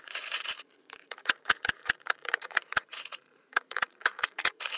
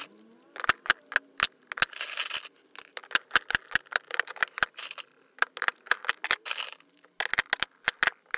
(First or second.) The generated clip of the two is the first